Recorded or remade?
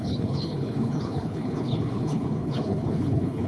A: remade